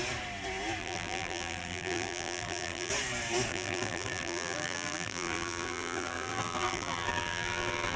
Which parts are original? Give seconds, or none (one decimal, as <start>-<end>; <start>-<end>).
0.0-0.8; 2.9-3.5